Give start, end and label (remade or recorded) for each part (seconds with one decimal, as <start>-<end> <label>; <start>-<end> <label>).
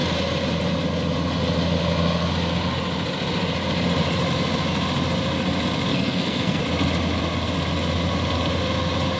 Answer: 0.0-5.9 recorded; 5.9-6.6 remade; 6.6-9.2 recorded